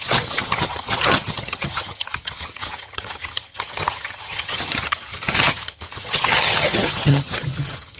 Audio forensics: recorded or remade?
remade